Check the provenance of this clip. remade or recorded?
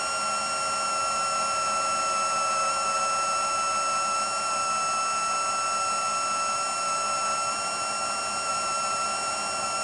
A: recorded